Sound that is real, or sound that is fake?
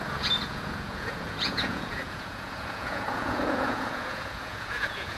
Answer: fake